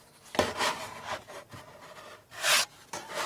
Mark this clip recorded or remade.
remade